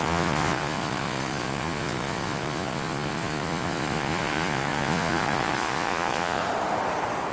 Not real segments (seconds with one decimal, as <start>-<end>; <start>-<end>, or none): 0.0-6.4